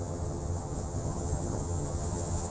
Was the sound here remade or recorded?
remade